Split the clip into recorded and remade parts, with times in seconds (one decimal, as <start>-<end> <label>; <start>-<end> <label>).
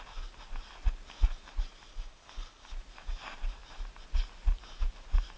0.0-1.9 recorded; 1.9-2.7 remade; 2.7-5.4 recorded